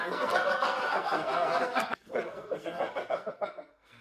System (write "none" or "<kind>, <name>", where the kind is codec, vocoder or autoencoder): codec, SNAC